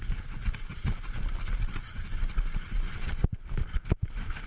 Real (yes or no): yes